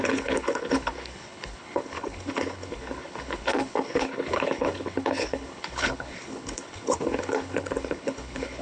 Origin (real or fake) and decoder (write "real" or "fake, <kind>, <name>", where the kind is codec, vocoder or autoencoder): fake, codec, HILCodec